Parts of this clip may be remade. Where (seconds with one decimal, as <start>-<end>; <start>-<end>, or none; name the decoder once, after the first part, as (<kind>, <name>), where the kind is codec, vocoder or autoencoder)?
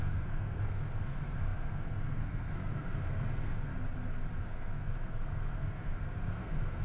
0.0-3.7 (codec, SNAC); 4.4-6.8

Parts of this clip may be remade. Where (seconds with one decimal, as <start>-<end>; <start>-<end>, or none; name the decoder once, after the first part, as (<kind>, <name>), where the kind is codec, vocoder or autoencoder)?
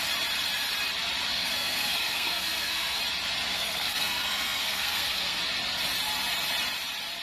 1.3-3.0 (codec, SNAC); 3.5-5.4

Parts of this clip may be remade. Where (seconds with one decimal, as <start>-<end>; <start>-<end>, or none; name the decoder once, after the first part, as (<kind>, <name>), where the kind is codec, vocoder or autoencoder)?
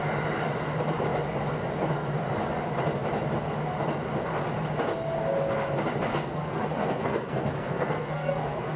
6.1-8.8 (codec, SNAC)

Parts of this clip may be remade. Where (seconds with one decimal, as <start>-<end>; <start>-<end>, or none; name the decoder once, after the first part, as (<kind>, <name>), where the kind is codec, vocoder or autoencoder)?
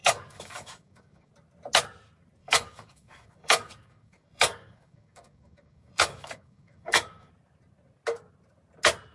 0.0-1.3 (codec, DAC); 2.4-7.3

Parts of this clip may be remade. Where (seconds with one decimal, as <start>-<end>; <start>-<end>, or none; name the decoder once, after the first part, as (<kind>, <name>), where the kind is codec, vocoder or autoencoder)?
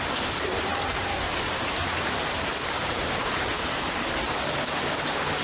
0.0-5.4 (vocoder, BigVGAN v2)